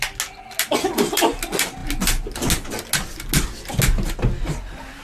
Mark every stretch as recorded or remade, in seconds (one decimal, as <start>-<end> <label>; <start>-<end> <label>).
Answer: 0.0-5.0 recorded